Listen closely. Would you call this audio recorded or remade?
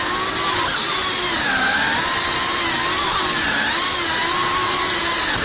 recorded